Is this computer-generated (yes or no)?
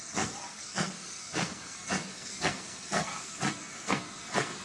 yes